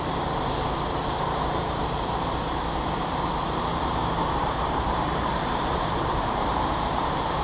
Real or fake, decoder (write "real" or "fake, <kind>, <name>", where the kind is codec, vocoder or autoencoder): fake, vocoder, BigVGAN v2